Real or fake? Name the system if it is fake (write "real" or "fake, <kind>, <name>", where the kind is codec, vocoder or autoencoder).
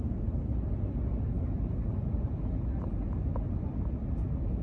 real